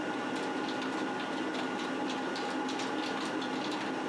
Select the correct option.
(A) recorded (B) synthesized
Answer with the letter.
A